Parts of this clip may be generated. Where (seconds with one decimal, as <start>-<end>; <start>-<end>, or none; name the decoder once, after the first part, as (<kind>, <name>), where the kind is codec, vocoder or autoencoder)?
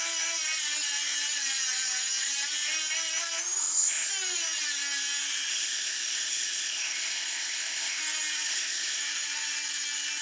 3.6-4.1 (codec, ZipCodec); 5.5-8.0; 8.5-9.0